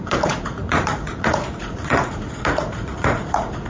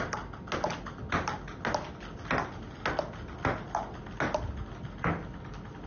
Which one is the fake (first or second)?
first